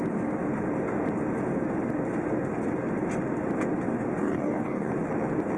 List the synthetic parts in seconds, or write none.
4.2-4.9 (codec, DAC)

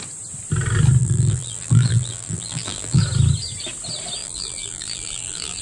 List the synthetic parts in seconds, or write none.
1.0-3.0 (vocoder, BigVGAN v2); 4.2-5.6

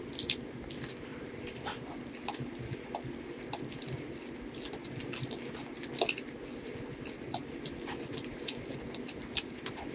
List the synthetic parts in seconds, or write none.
none

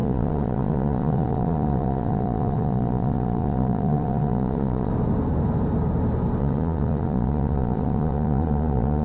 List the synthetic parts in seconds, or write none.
0.0-4.9 (vocoder, Vocos); 6.4-9.0

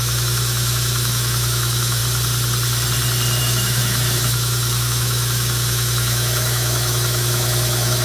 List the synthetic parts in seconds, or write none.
0.0-2.0 (autoencoder, DAC-VAE); 3.4-8.0

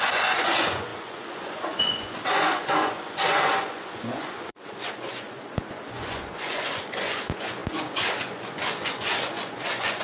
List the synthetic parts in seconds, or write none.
0.0-10.0 (vocoder, Vocos)

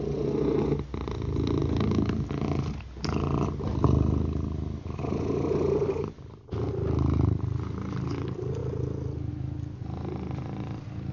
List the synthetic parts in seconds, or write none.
none

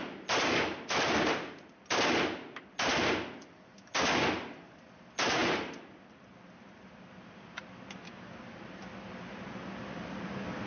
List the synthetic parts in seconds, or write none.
none